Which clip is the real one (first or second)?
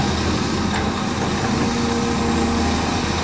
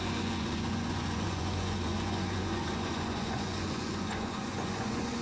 first